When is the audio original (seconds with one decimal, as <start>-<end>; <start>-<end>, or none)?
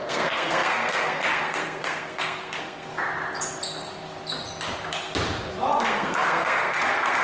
2.9-5.7